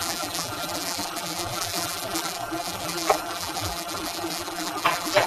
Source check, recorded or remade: remade